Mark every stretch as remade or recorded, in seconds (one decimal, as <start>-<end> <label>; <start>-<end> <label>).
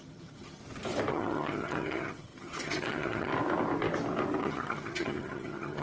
0.0-0.6 remade; 0.6-1.1 recorded; 1.1-3.3 remade; 3.3-4.4 recorded; 4.4-5.8 remade